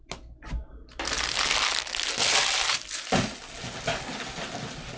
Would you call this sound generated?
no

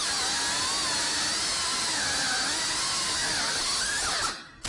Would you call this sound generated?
no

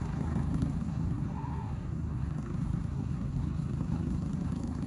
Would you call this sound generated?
yes